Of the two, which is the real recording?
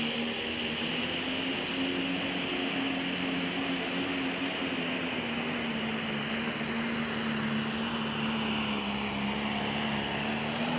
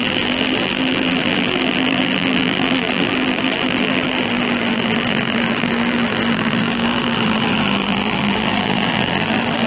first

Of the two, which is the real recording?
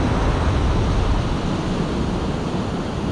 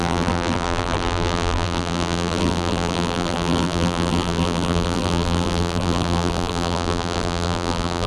first